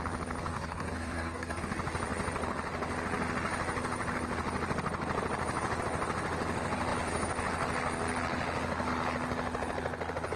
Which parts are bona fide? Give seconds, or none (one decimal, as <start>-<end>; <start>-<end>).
0.0-0.5; 1.6-10.4